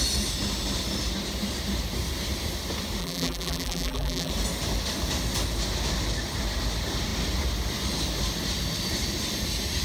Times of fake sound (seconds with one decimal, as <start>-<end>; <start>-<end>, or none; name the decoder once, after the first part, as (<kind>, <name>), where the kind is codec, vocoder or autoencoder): 3.0-4.3 (vocoder, BigVGAN v2)

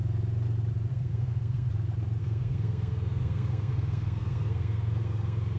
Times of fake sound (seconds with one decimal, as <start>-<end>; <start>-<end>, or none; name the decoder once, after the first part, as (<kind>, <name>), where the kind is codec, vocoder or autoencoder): 0.9-1.7 (codec, SNAC); 2.2-5.6

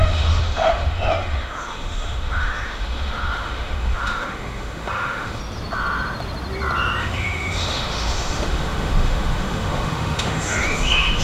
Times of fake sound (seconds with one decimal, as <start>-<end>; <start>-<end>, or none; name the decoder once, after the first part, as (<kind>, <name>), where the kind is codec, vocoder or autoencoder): 0.0-5.4 (autoencoder, DAC-VAE); 7.0-11.2

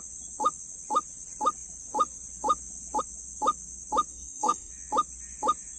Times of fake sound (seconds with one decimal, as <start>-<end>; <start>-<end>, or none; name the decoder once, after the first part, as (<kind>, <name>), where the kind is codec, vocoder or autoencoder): 4.1-4.7 (codec, DAC)

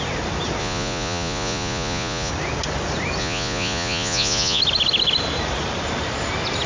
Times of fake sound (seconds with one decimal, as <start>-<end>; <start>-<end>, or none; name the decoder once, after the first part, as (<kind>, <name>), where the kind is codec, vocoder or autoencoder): 0.6-2.3 (vocoder, Vocos); 3.2-4.6

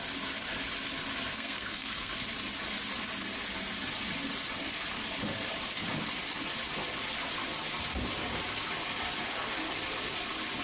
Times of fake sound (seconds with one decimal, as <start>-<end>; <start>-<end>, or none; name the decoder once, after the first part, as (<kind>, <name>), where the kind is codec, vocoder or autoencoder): 1.3-2.1 (codec, SNAC)